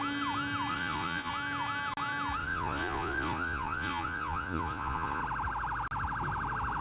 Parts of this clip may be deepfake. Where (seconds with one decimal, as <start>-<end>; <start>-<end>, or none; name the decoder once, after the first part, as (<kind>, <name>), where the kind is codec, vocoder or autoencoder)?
0.7-1.3 (vocoder, Vocos); 2.4-5.2